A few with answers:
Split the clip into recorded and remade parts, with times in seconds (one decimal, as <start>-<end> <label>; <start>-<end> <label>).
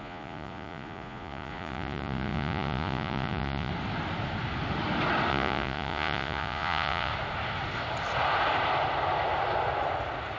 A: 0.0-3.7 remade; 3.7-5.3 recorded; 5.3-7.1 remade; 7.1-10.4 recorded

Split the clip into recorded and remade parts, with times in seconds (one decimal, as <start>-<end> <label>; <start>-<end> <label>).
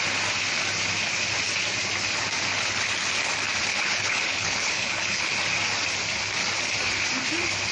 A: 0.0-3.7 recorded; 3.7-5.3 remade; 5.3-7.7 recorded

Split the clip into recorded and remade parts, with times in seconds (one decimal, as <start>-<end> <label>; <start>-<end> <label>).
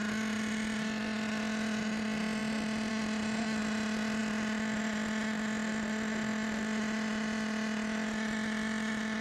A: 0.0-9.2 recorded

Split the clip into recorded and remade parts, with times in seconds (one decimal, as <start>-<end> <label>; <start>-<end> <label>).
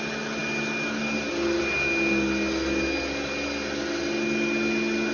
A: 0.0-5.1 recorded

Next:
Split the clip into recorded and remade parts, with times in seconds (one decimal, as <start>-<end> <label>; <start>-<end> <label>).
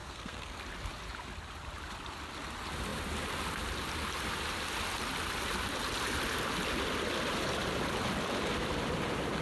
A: 0.0-0.6 remade; 0.6-9.4 recorded